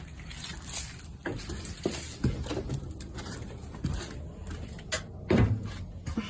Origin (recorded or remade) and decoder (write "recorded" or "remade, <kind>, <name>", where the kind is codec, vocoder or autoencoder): recorded